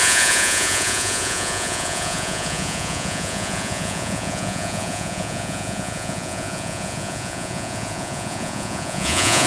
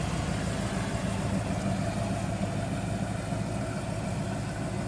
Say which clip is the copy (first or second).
first